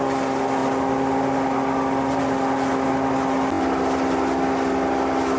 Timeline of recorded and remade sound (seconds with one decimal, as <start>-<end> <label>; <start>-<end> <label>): 0.0-5.4 recorded